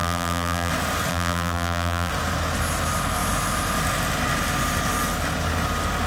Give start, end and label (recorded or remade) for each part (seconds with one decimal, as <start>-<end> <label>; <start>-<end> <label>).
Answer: 0.0-0.7 remade; 0.7-1.1 recorded; 1.1-2.1 remade; 2.1-6.1 recorded

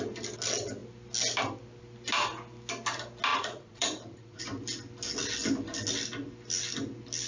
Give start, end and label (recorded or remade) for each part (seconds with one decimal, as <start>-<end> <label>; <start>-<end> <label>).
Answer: 0.0-3.3 recorded; 3.3-4.4 remade; 4.4-7.3 recorded

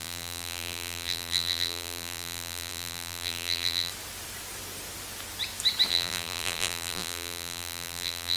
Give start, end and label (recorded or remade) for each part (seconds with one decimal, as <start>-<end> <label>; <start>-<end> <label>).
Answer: 0.0-3.9 remade; 3.9-5.9 recorded; 5.9-8.4 remade

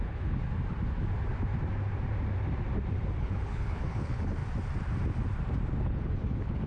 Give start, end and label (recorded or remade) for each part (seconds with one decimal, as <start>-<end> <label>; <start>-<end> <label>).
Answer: 0.0-0.4 remade; 0.4-3.2 recorded; 3.2-4.4 remade; 4.4-5.8 recorded; 5.8-6.7 remade

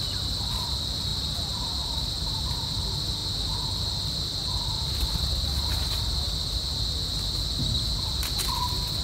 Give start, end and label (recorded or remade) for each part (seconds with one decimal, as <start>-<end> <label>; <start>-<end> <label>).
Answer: 0.0-3.2 remade; 3.2-7.9 recorded; 7.9-9.0 remade